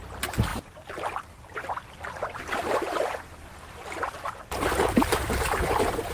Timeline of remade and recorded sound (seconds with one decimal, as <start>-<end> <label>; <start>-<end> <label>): 0.0-0.5 recorded; 0.5-1.7 remade; 1.7-6.1 recorded